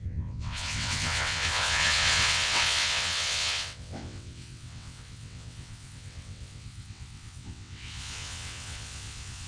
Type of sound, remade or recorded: remade